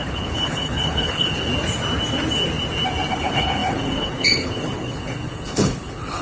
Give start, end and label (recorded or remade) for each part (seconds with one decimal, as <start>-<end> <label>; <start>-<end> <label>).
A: 0.0-1.5 remade; 1.5-3.1 recorded; 3.1-6.2 remade